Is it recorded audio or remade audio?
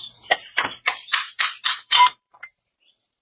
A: remade